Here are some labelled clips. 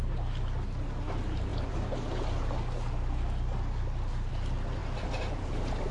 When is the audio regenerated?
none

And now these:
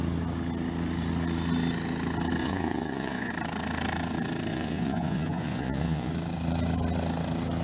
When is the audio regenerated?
2.4-3.3; 4.5-6.1

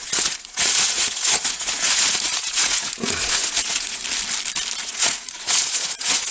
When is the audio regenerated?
0.0-4.0; 4.8-6.3

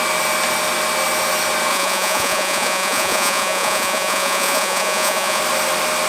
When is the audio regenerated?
1.7-5.4

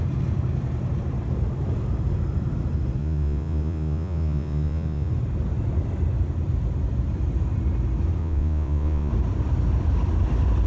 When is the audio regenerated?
3.0-5.1; 8.2-9.1

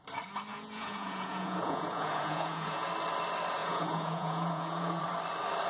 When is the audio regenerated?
0.5-2.9; 3.6-5.0

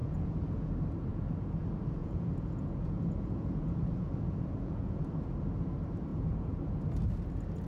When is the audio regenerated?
0.0-0.7; 1.1-1.6; 2.0-5.1; 6.1-6.8

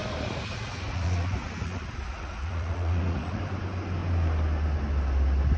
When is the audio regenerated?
0.0-3.4